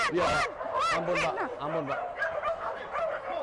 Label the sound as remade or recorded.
recorded